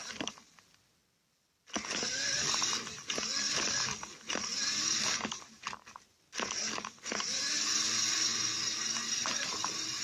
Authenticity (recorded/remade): recorded